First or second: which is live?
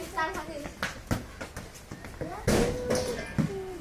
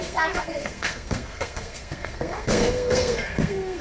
first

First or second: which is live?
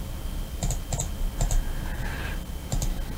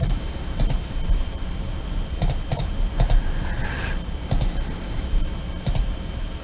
first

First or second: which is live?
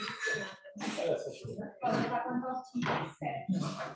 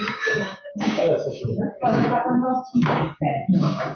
first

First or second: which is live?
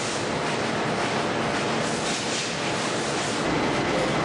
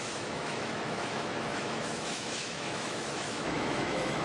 first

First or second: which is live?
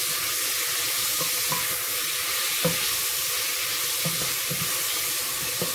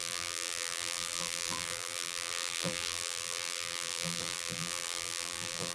first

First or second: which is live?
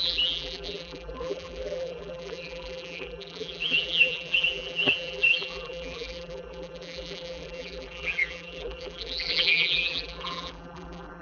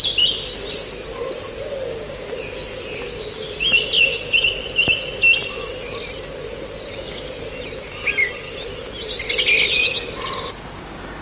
second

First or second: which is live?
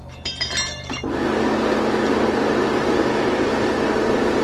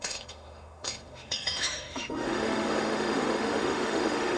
first